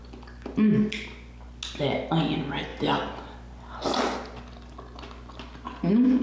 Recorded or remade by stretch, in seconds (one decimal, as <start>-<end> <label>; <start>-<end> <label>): 0.0-6.2 recorded